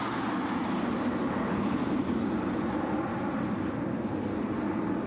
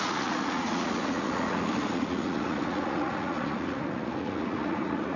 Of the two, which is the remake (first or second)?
second